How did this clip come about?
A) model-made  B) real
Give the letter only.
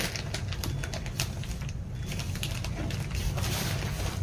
B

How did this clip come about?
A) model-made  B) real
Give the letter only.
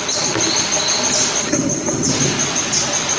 B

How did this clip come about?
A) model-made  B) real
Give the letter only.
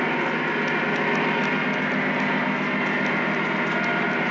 B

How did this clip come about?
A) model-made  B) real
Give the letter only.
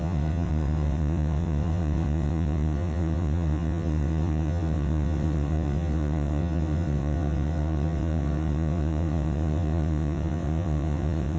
A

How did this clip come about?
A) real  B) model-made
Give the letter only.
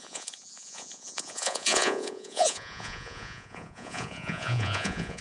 B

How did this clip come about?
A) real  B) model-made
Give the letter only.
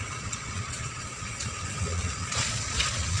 B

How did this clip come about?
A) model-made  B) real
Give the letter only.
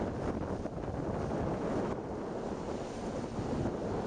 B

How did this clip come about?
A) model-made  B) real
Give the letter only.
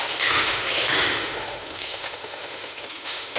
A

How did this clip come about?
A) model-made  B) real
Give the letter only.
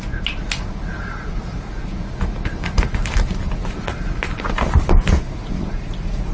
B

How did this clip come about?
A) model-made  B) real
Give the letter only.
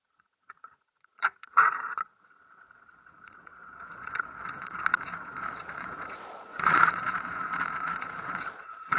A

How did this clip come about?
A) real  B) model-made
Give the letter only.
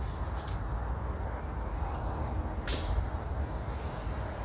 A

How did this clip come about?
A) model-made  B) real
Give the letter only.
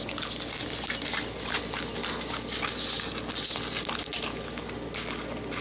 B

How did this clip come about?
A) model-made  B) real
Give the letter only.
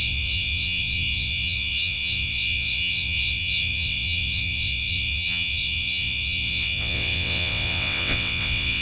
A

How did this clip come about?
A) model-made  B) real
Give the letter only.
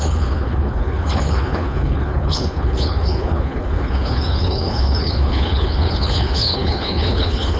A